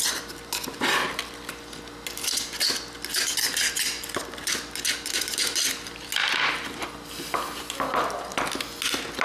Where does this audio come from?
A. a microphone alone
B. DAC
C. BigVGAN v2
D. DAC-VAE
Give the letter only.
A